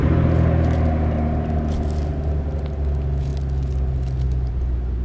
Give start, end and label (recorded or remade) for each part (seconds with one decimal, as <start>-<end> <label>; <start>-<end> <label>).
0.0-5.0 recorded